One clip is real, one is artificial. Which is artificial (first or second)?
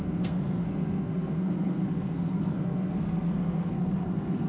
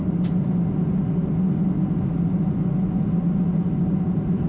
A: first